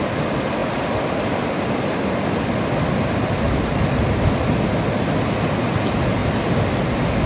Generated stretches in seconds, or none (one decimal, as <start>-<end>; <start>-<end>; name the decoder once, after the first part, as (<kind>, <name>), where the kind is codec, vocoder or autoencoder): none